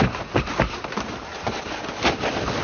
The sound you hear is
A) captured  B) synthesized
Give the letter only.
A